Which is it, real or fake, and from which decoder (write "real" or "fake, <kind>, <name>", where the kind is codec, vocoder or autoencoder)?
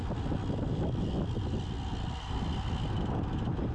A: real